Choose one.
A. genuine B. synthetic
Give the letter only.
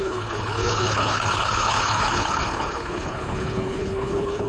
B